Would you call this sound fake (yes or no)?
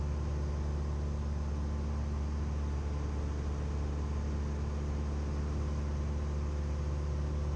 no